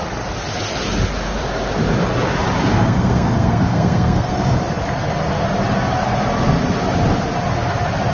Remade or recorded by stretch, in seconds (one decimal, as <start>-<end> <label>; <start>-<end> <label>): 0.0-2.7 recorded; 2.7-4.6 remade; 4.6-8.1 recorded